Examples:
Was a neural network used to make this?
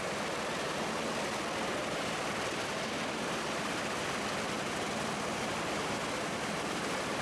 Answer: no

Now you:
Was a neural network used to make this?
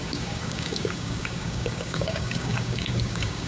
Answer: yes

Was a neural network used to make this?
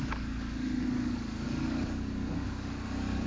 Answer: yes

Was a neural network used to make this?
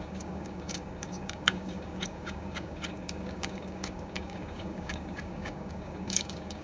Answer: yes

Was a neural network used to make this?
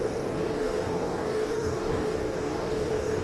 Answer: yes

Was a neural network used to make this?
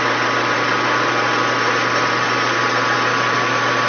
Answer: no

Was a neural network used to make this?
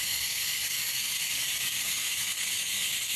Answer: yes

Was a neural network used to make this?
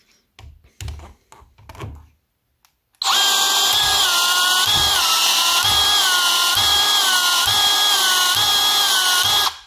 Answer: no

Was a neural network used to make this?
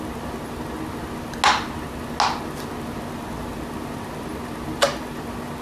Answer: no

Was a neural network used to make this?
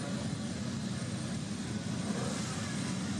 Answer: no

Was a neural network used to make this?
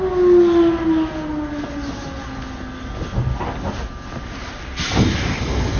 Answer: no